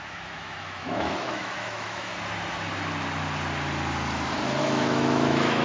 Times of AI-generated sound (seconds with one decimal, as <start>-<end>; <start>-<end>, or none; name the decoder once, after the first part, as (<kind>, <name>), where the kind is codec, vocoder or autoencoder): 0.0-2.1 (autoencoder, DAC-VAE); 4.6-5.6